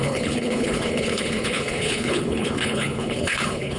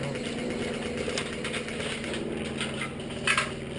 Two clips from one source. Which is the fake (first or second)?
first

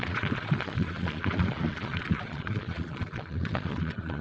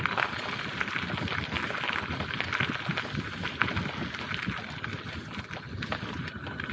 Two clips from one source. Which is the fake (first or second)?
first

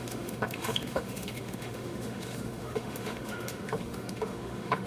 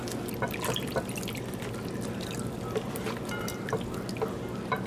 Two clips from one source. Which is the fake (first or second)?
first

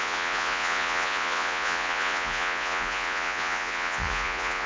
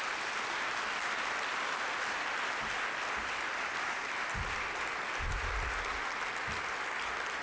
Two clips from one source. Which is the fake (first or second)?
first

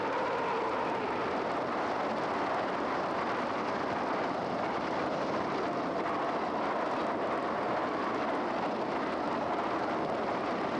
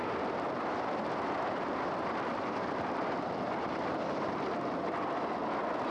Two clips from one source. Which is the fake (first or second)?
second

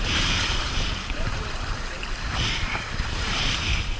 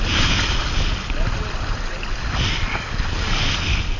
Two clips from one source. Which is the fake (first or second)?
first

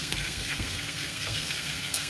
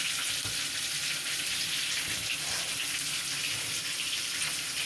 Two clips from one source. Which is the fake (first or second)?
first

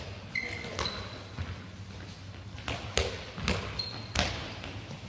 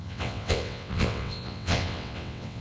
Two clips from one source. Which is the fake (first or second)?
second